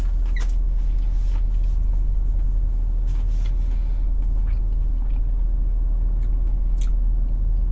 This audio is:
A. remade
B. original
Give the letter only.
B